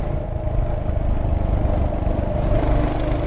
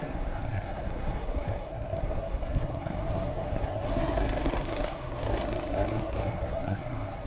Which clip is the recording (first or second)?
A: first